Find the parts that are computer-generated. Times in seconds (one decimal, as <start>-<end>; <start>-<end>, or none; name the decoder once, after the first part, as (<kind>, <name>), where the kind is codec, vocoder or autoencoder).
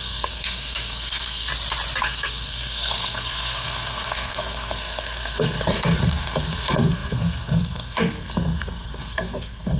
0.0-1.5 (codec, SNAC); 2.0-9.8